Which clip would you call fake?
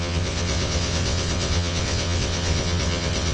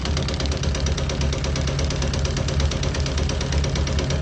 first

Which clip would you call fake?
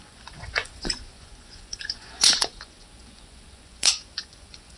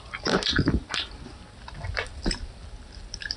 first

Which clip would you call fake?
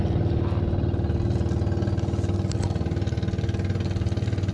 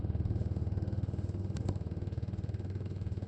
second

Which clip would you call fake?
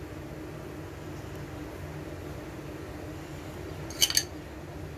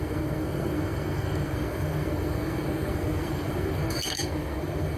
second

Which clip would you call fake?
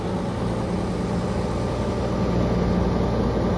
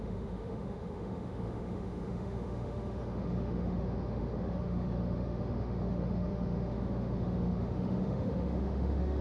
second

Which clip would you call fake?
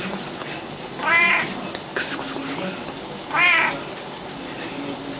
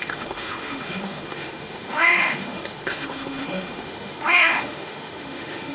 second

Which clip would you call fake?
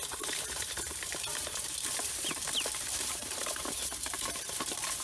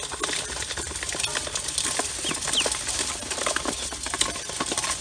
first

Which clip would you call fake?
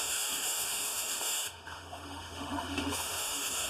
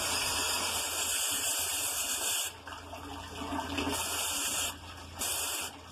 first